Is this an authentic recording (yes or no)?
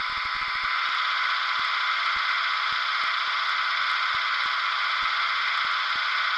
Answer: yes